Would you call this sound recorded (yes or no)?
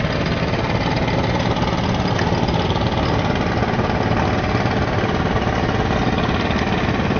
yes